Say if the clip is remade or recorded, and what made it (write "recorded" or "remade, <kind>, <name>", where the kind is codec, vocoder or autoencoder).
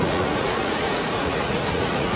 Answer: remade, vocoder, Vocos